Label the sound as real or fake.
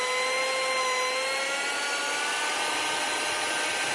real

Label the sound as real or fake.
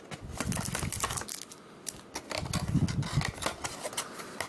real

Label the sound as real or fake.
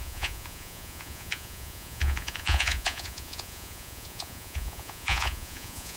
fake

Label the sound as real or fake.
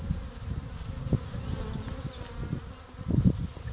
real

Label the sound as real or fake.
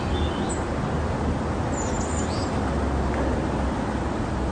real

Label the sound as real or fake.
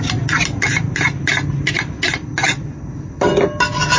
real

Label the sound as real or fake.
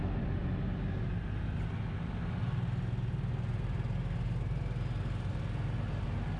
real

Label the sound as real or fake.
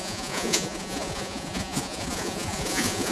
fake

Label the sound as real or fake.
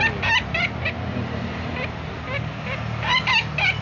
real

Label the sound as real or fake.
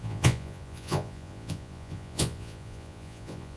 fake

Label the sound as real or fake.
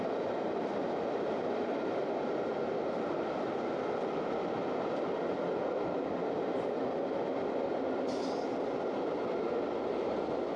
real